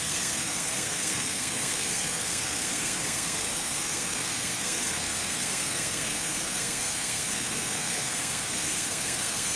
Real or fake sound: fake